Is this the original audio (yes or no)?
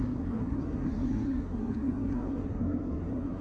no